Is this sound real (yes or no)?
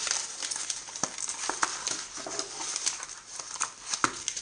yes